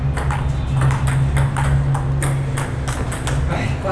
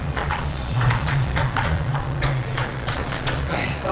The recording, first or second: first